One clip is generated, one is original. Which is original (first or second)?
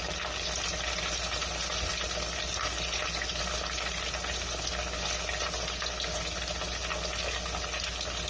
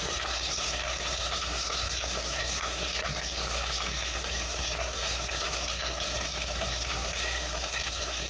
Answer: first